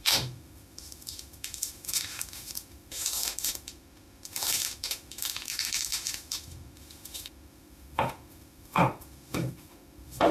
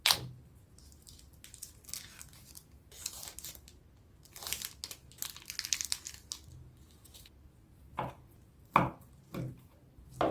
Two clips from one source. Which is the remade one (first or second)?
first